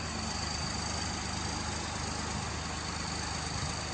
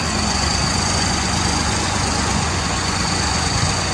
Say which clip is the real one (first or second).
first